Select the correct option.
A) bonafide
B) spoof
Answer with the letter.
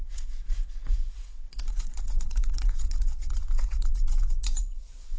B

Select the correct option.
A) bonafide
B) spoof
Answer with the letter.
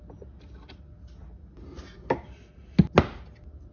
A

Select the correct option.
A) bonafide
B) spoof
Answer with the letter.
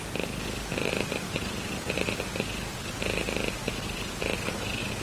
A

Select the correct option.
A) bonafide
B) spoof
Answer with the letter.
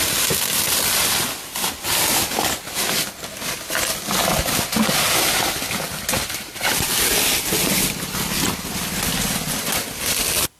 A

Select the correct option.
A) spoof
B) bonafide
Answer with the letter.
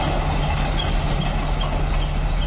B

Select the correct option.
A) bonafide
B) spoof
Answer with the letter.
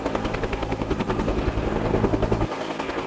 B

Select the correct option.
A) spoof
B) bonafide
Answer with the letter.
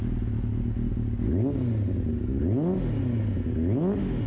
B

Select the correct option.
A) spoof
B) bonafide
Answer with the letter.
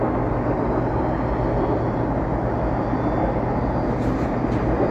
B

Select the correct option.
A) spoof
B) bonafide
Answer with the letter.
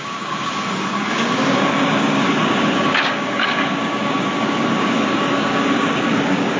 A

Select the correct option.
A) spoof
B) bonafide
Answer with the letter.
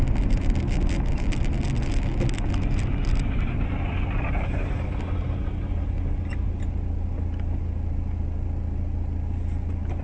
B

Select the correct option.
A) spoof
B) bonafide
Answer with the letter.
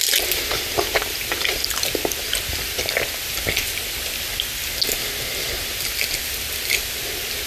B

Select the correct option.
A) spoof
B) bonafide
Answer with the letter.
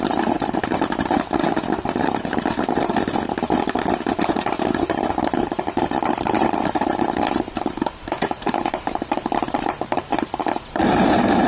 A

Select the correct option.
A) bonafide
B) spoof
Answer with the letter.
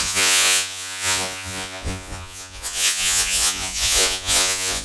B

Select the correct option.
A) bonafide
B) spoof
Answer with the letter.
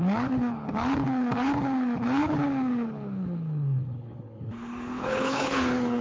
B